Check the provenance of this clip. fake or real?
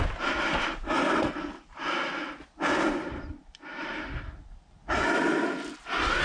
real